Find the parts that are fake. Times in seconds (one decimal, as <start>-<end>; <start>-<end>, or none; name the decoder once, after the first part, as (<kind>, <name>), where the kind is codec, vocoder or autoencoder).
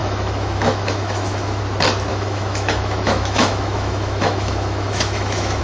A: 0.0-1.6 (autoencoder, DAC-VAE); 2.1-5.6